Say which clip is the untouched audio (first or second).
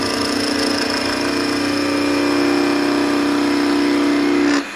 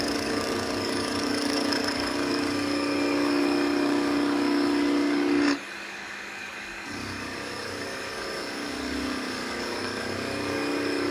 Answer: first